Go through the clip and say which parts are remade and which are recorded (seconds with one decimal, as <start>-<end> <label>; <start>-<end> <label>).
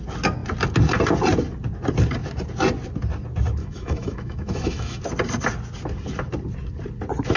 0.0-3.6 recorded; 3.6-5.0 remade; 5.0-7.4 recorded